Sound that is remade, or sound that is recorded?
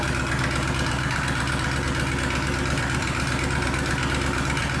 recorded